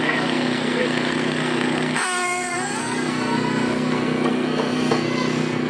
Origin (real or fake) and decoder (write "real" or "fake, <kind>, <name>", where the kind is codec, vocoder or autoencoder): fake, codec, SNAC